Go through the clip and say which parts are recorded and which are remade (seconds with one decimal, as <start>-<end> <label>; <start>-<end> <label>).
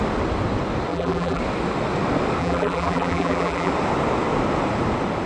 0.0-0.9 recorded; 0.9-1.4 remade; 1.4-2.4 recorded; 2.4-3.7 remade; 3.7-5.3 recorded